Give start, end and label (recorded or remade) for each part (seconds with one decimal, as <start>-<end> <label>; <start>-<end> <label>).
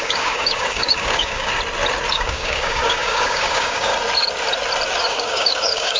0.0-1.5 remade; 1.5-2.1 recorded; 2.1-3.9 remade; 3.9-5.0 recorded; 5.0-6.0 remade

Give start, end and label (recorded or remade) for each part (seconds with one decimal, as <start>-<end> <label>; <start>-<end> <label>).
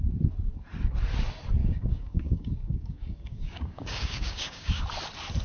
0.0-1.6 recorded; 1.6-4.8 remade; 4.8-5.4 recorded